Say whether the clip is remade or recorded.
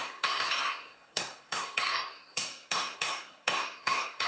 remade